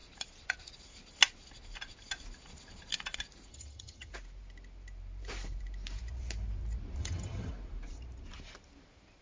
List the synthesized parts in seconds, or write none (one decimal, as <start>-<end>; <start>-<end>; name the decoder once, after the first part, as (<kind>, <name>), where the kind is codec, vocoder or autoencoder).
3.5-4.1 (vocoder, HiFi-GAN); 7.0-7.5